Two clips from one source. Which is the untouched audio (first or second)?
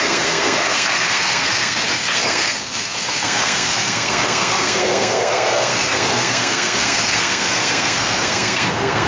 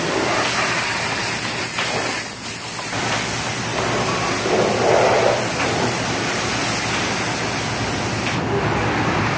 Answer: second